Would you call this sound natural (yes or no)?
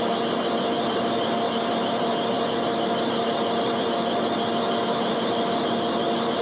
yes